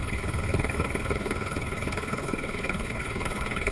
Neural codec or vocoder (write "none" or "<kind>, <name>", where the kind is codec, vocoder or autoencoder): codec, HILCodec